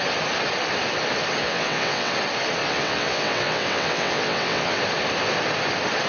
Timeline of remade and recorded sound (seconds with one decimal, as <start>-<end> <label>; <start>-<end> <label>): 0.0-1.4 recorded; 1.4-2.1 remade; 2.1-2.6 recorded; 2.6-4.8 remade; 4.8-6.1 recorded